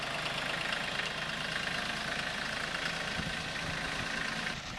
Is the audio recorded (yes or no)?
yes